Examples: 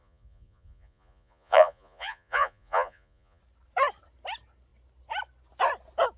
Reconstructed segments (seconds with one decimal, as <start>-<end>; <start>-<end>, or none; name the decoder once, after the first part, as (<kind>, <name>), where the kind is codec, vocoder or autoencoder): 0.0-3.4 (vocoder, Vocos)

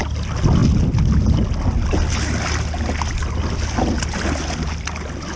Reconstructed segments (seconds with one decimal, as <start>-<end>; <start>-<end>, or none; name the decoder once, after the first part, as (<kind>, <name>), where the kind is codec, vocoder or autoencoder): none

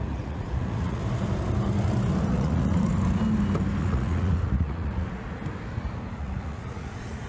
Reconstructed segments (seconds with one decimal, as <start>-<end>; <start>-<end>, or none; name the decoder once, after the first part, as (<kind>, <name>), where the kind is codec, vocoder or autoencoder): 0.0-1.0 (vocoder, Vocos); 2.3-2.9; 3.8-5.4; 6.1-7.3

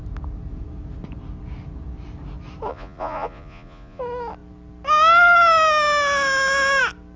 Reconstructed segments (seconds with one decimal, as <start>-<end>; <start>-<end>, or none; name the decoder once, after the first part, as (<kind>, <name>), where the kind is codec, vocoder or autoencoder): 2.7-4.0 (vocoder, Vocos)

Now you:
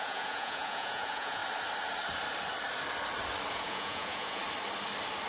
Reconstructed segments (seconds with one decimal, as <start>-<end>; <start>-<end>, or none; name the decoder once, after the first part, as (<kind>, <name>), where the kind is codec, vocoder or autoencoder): 0.0-1.4 (vocoder, Vocos); 3.5-4.4